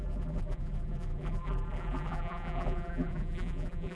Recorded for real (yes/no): no